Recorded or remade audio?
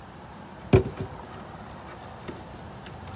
recorded